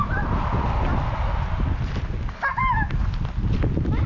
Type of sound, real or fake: real